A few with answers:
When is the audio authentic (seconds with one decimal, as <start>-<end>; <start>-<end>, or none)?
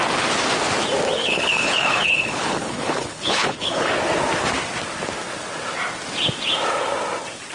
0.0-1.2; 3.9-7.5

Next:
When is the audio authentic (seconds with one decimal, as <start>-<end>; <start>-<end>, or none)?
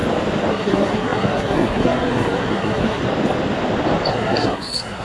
0.0-0.5; 3.0-4.1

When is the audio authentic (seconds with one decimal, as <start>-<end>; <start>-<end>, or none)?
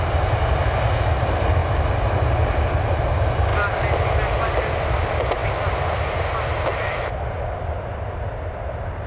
0.0-9.1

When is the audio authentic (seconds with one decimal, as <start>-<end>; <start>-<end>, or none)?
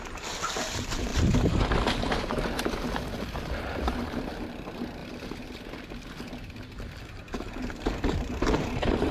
1.1-1.9; 5.0-8.0